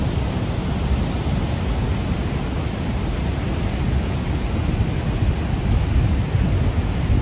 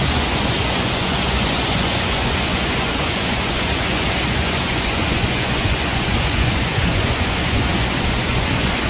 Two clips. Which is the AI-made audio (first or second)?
second